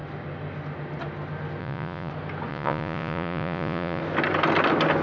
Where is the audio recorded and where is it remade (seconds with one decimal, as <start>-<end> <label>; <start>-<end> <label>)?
0.0-1.6 recorded; 1.6-2.1 remade; 2.1-2.5 recorded; 2.5-4.0 remade; 4.0-5.0 recorded